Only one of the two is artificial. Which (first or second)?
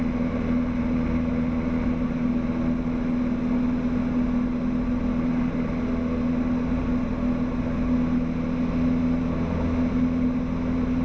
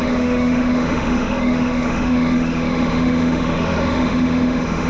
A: second